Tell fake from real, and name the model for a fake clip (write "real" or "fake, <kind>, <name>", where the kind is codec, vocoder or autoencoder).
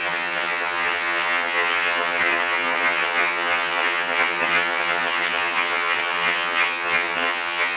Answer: fake, vocoder, HiFi-GAN